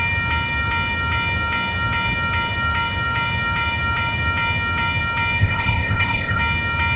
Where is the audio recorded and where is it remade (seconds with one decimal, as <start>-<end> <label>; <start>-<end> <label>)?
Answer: 0.0-5.4 recorded; 5.4-6.4 remade; 6.4-7.0 recorded